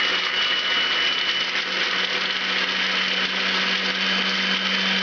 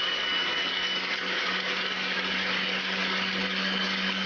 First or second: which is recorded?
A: first